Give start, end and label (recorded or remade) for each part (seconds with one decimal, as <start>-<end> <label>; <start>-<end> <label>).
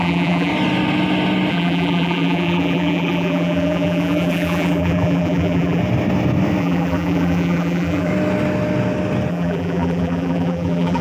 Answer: 0.0-0.5 remade; 0.5-1.5 recorded; 1.5-5.8 remade; 5.8-6.6 recorded; 6.6-8.1 remade; 8.1-9.3 recorded; 9.3-11.0 remade